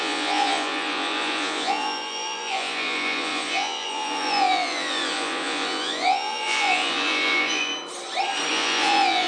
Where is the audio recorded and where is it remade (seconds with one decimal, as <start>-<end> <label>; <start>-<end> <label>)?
0.0-7.7 remade; 7.7-8.5 recorded; 8.5-9.3 remade